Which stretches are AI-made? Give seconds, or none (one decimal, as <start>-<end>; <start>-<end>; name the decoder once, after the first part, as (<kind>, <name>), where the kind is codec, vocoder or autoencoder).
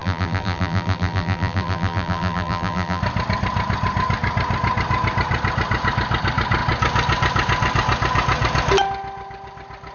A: 0.0-3.0 (vocoder, BigVGAN v2)